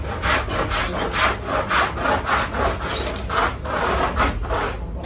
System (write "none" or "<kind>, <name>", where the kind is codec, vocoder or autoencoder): none